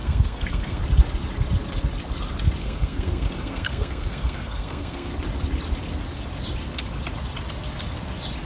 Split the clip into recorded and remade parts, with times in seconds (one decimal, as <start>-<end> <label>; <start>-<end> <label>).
0.0-0.8 remade; 0.8-2.6 recorded; 2.6-5.1 remade; 5.1-8.5 recorded